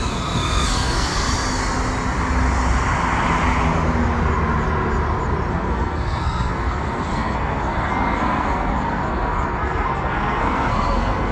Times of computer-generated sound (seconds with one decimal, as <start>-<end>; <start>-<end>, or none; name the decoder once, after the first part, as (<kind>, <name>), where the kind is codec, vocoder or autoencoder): 0.0-1.3 (codec, SNAC); 5.5-11.3